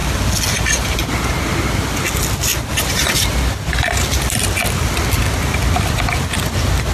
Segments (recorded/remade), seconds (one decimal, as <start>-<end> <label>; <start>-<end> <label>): 0.0-6.9 recorded